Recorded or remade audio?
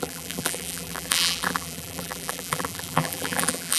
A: remade